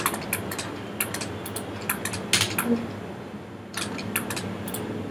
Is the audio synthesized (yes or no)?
no